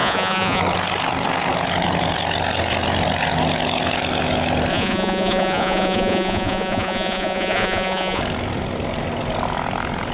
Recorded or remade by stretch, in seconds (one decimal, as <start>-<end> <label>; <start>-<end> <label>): 0.0-0.6 remade; 0.6-4.7 recorded; 4.7-8.2 remade; 8.2-10.1 recorded